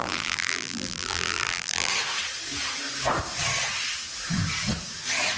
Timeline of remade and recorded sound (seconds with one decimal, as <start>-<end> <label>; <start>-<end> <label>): 0.0-1.9 remade; 1.9-5.4 recorded